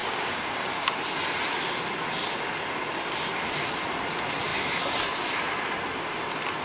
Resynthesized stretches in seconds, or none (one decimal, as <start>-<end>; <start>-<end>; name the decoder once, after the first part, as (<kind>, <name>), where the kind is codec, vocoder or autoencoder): 0.0-0.9 (codec, DAC)

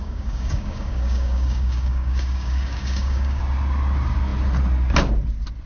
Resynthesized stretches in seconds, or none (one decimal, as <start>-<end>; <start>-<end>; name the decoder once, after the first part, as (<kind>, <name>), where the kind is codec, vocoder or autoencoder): 0.0-3.4 (codec, DAC)